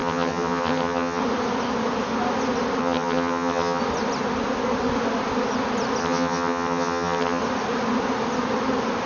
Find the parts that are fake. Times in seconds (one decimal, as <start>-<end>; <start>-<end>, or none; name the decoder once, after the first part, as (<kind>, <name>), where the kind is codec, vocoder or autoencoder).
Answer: 0.0-1.2 (vocoder, HiFi-GAN); 2.8-3.8; 6.0-7.4